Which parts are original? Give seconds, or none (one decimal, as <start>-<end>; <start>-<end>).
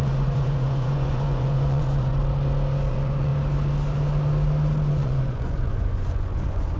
2.1-2.9; 3.3-4.9